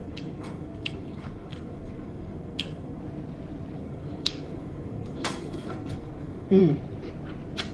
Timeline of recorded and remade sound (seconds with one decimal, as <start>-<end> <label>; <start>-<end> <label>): 0.0-3.0 remade; 3.0-3.8 recorded; 3.8-6.6 remade; 6.6-7.7 recorded